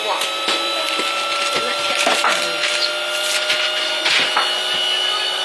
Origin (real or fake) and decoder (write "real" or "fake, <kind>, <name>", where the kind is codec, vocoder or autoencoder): real